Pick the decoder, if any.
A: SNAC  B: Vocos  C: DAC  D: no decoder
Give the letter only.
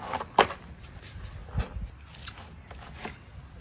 D